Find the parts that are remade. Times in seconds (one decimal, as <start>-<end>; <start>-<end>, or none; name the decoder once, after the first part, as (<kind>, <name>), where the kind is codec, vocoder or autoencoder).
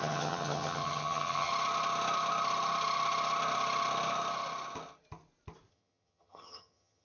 0.0-1.5 (vocoder, HiFi-GAN); 5.7-7.0